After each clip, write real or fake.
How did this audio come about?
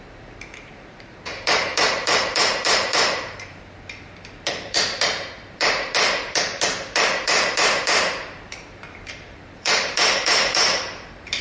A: fake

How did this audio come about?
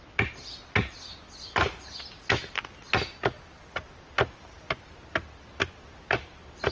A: real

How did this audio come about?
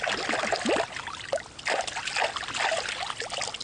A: real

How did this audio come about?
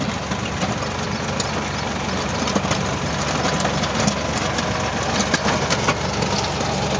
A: real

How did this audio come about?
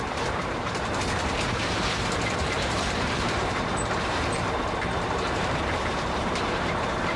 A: fake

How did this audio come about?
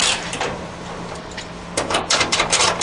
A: fake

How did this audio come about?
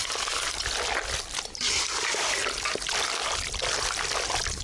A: real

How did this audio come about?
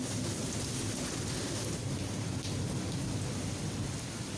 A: real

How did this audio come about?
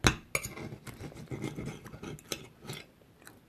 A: real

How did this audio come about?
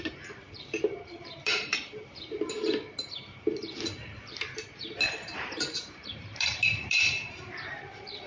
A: fake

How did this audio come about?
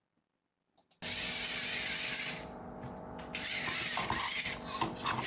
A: real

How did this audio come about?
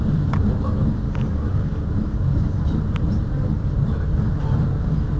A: fake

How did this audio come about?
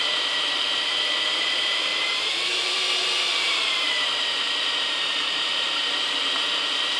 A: fake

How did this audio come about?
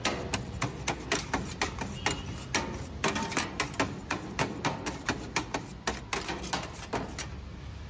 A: real